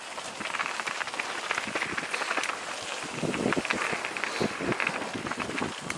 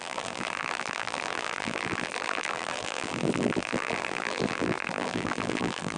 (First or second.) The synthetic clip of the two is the second